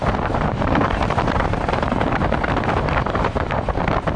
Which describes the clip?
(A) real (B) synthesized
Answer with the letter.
B